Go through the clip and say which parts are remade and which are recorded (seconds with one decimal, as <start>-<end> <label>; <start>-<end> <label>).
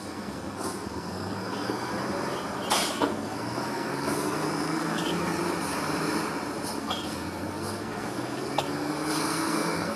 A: 0.0-1.9 remade; 1.9-2.9 recorded; 2.9-5.4 remade; 5.4-6.8 recorded; 6.8-10.0 remade